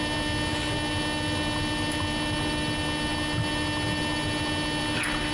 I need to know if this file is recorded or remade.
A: recorded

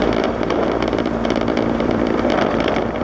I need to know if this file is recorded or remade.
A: remade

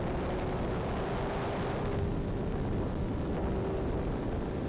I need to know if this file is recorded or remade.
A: recorded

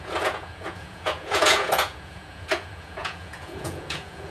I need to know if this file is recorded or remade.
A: remade